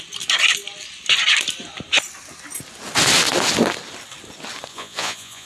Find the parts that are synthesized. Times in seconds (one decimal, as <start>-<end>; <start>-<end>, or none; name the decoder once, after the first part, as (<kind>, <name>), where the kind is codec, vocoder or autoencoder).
4.7-5.5 (vocoder, Vocos)